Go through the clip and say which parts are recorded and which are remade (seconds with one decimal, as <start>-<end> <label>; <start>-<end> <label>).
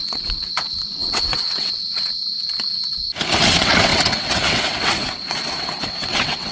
0.0-2.2 remade; 2.2-3.3 recorded; 3.3-6.5 remade